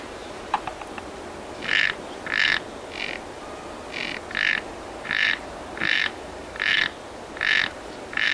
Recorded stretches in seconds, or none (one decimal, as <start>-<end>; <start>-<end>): 0.7-4.7; 6.7-7.7